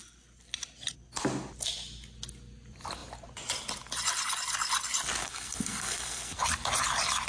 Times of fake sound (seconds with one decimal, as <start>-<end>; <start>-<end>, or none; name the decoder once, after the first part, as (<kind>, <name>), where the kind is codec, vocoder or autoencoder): 5.2-6.4 (codec, SNAC)